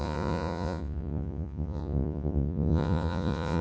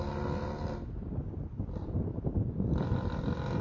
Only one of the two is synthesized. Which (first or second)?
first